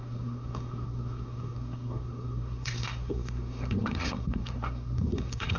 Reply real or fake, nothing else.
fake